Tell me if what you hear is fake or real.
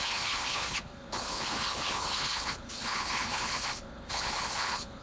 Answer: fake